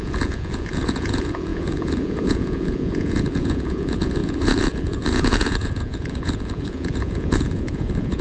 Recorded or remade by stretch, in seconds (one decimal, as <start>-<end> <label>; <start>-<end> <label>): 0.0-8.2 remade

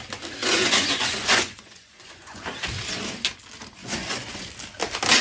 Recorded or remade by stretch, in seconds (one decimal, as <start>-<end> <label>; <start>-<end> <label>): 0.0-0.4 recorded; 0.4-2.4 remade; 2.4-3.8 recorded; 3.8-4.5 remade; 4.5-5.2 recorded